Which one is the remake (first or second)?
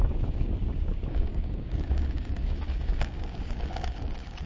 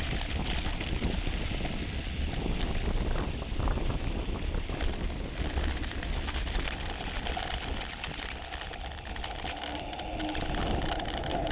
first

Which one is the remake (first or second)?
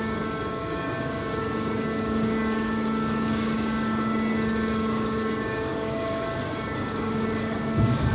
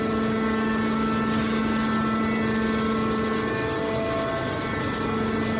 first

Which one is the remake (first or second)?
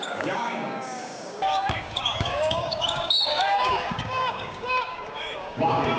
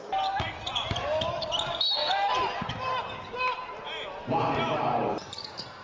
first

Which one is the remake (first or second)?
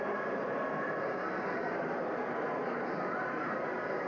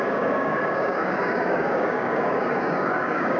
second